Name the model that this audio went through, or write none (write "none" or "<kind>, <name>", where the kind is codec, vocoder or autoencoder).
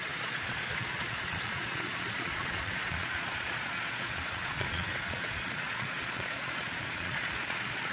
vocoder, Vocos